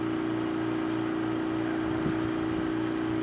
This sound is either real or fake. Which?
real